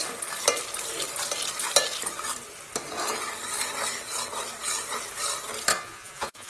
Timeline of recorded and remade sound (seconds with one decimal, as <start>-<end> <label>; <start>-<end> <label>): 0.0-5.7 recorded; 5.7-6.5 remade